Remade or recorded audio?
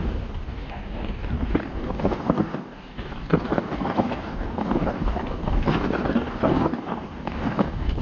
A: remade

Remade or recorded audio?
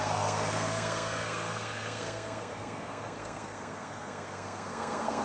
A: remade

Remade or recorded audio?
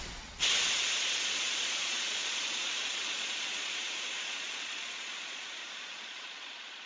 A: remade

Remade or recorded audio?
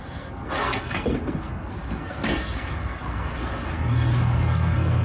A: remade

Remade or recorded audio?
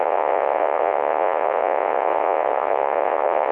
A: remade